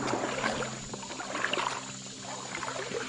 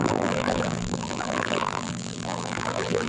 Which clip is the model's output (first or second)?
second